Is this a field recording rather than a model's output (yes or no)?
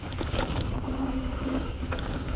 no